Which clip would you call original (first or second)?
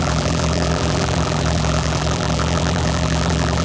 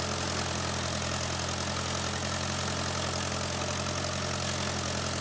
second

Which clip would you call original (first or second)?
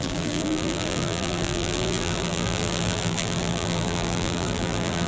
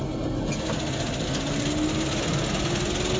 second